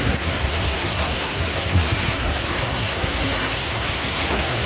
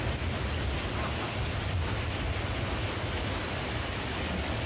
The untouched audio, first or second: second